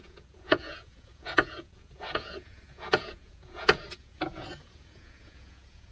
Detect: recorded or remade remade